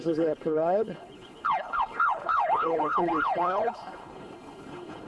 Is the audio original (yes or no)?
no